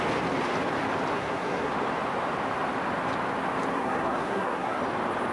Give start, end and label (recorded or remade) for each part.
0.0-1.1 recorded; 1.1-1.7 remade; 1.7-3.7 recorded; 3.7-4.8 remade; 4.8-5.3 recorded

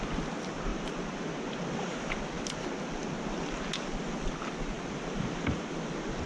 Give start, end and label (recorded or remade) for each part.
0.0-6.3 recorded

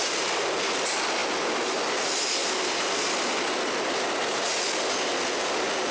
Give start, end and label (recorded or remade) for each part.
0.0-5.9 recorded